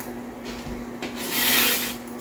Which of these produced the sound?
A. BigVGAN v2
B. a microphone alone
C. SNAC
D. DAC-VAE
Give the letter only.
B